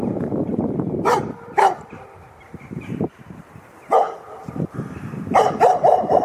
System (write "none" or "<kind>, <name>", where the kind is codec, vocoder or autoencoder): vocoder, BigVGAN v2